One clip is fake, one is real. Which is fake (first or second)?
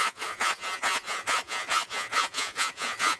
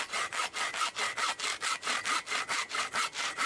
first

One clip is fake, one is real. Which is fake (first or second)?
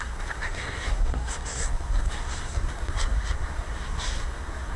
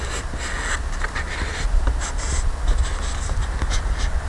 first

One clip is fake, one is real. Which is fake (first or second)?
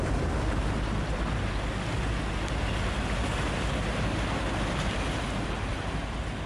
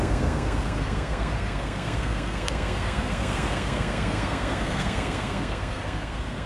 second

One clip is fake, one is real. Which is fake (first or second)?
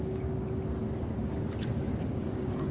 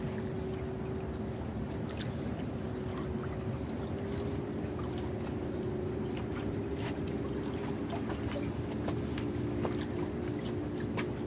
first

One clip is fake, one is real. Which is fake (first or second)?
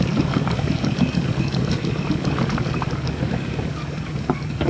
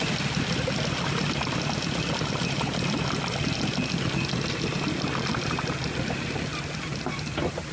first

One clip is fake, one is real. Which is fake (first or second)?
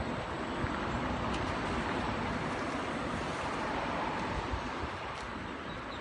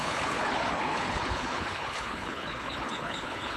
second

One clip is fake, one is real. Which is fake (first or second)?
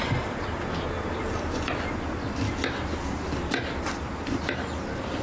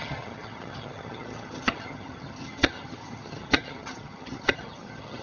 second